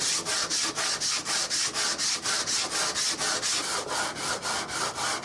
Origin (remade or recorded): recorded